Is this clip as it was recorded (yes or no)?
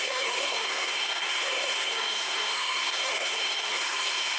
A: no